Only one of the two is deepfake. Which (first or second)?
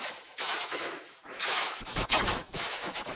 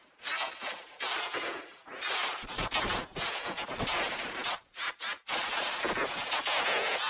first